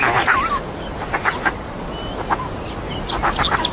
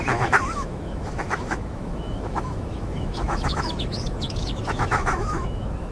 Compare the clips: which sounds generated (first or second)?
second